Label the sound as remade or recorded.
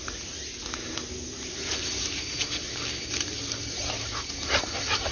recorded